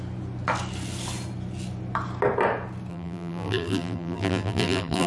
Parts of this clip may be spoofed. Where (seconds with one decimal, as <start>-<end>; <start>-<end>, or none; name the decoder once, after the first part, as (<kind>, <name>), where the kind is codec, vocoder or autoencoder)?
2.9-5.1 (vocoder, BigVGAN v2)